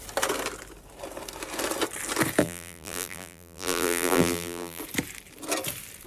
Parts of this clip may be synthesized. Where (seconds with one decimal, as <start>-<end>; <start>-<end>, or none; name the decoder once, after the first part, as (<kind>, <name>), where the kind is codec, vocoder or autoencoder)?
2.4-4.8 (vocoder, BigVGAN v2)